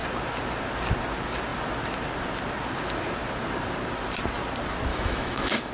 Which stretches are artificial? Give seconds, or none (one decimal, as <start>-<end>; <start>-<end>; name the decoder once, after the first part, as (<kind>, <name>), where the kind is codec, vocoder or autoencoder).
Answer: 4.9-5.7 (autoencoder, DAC-VAE)